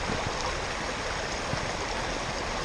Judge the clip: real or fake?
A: real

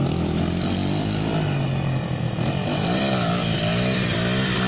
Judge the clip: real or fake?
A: real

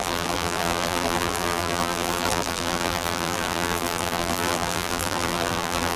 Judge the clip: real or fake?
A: fake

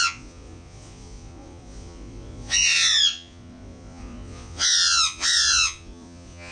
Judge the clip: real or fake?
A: fake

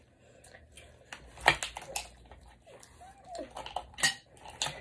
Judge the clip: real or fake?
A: real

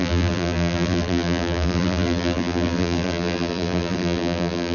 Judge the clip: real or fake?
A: fake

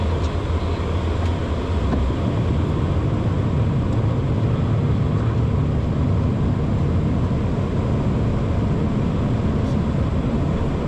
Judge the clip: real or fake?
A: real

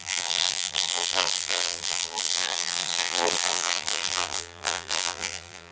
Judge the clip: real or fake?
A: fake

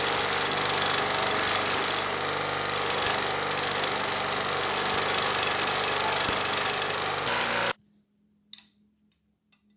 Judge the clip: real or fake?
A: real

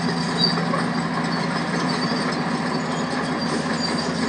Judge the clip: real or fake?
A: real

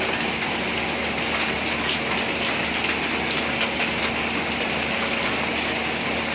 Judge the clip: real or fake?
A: real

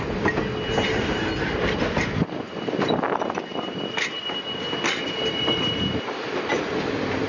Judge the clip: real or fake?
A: real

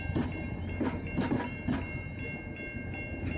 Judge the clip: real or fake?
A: real